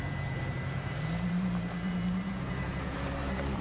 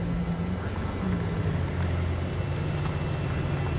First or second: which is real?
second